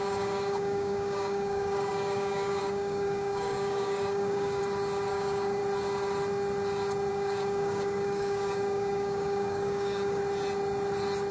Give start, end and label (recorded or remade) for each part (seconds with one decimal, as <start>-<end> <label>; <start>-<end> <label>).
0.0-4.6 remade; 4.6-5.1 recorded; 5.1-5.6 remade; 5.6-7.1 recorded; 7.1-10.2 remade; 10.2-11.3 recorded